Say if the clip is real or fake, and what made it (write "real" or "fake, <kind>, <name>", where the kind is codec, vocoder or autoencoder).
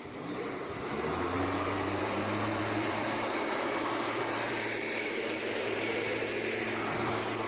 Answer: fake, vocoder, BigVGAN v2